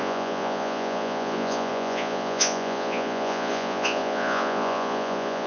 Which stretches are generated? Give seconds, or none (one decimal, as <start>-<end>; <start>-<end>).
0.0-5.5